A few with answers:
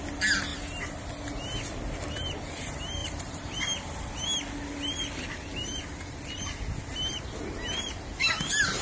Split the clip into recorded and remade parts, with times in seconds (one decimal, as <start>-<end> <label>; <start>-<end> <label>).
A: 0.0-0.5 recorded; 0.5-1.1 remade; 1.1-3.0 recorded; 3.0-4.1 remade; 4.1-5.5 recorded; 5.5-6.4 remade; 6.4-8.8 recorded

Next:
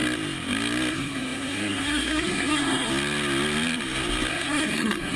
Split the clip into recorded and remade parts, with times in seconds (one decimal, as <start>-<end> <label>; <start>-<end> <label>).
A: 0.0-0.9 recorded; 0.9-2.9 remade; 2.9-4.3 recorded; 4.3-5.2 remade

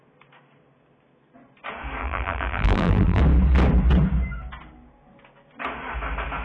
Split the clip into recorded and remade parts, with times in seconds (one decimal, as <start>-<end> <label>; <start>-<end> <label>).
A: 0.0-2.0 recorded; 2.0-3.2 remade; 3.2-6.4 recorded

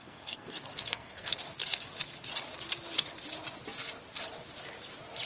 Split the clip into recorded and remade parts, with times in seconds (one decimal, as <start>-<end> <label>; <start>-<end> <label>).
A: 0.0-1.3 remade; 1.3-5.3 recorded

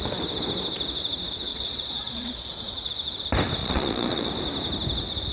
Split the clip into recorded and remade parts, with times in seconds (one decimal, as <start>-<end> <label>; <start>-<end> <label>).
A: 0.0-1.5 recorded; 1.5-2.9 remade; 2.9-3.6 recorded; 3.6-4.3 remade; 4.3-5.3 recorded

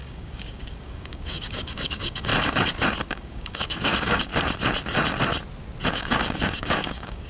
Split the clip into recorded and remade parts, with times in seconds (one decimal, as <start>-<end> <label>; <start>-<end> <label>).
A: 0.0-2.3 remade; 2.3-3.1 recorded; 3.1-4.3 remade; 4.3-5.9 recorded; 5.9-7.3 remade

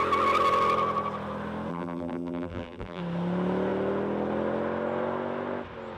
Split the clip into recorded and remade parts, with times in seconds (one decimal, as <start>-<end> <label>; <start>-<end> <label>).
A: 0.0-1.7 recorded; 1.7-3.0 remade; 3.0-6.0 recorded

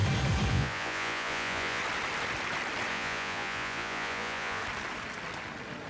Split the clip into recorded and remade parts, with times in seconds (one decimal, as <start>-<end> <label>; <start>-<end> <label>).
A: 0.0-0.5 recorded; 0.5-1.8 remade; 1.8-2.9 recorded; 2.9-4.6 remade; 4.6-5.9 recorded